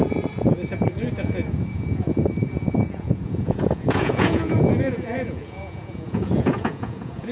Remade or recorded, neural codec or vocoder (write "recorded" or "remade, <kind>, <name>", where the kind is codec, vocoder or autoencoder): remade, vocoder, Vocos